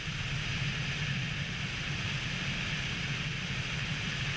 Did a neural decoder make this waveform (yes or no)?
no